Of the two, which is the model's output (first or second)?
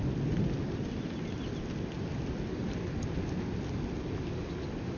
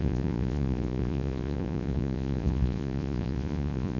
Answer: second